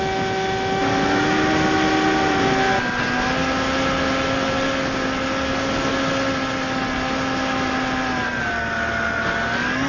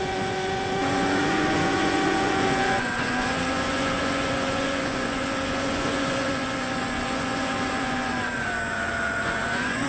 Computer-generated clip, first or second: second